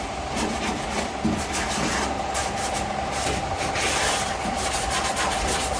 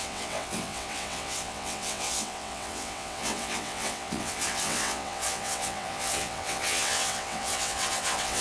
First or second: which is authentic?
first